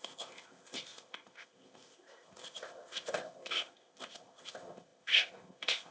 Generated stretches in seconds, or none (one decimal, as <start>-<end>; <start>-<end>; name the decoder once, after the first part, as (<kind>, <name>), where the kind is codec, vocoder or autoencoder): 0.0-5.9 (codec, ZipCodec)